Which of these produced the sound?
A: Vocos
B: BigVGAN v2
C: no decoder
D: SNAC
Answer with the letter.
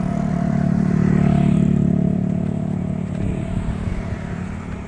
B